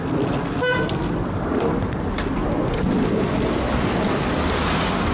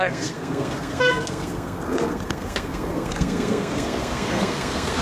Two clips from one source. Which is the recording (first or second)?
first